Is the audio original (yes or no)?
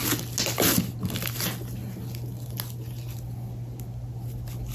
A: yes